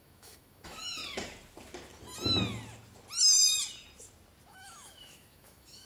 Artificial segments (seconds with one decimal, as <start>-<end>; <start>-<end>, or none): 0.0-1.0; 4.5-5.9